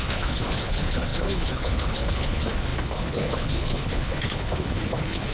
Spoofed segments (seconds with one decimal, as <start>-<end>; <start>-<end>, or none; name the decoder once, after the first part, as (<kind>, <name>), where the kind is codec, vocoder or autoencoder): 0.0-5.3 (codec, HILCodec)